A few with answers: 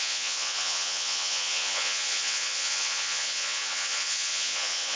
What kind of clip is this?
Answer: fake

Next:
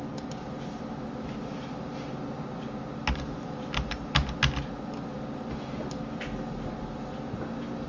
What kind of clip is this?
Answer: real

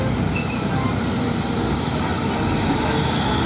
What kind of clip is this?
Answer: real